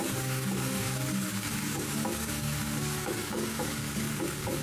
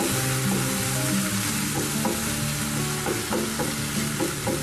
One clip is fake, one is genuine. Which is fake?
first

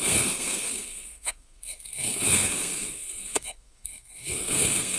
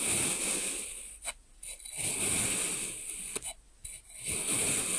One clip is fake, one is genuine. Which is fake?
first